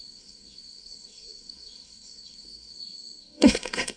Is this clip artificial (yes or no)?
yes